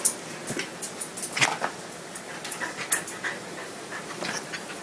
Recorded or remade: recorded